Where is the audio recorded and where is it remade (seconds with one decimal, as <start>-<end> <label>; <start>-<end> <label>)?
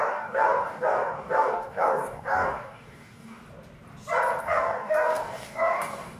0.0-3.4 remade; 3.4-4.4 recorded; 4.4-6.2 remade